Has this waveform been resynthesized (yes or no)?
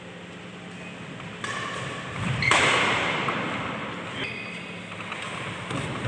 no